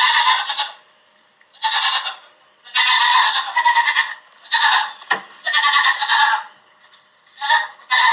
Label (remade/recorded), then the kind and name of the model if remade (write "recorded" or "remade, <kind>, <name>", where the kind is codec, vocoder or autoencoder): recorded